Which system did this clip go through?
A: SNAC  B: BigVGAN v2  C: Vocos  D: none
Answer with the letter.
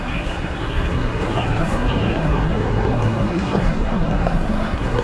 A